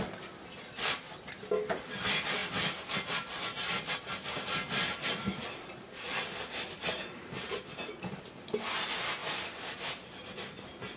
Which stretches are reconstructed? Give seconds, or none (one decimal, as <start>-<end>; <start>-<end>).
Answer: none